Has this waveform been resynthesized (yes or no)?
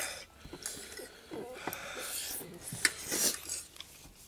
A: no